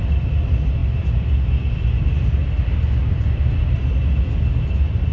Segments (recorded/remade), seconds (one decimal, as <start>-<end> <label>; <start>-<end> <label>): 0.0-3.0 recorded; 3.0-3.8 remade; 3.8-5.1 recorded